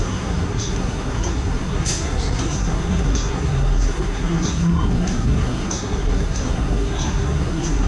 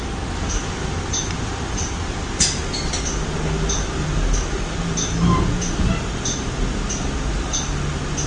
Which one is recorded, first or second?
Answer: second